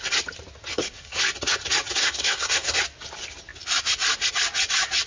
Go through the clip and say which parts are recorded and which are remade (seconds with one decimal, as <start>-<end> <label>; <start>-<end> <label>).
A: 0.0-0.7 recorded; 0.7-1.2 remade; 1.2-2.0 recorded; 2.0-2.8 remade; 2.8-5.1 recorded